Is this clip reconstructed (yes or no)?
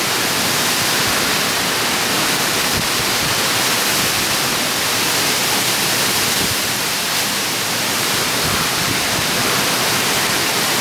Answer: yes